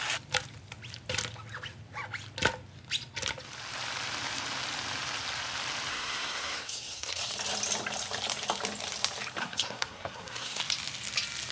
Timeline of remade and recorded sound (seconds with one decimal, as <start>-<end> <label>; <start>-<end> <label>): 0.0-5.9 recorded; 5.9-7.2 remade; 7.2-9.4 recorded; 9.4-10.6 remade; 10.6-11.5 recorded